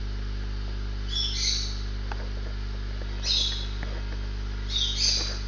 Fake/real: real